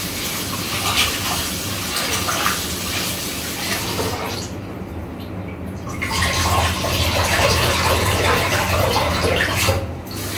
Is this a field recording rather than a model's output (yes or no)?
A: yes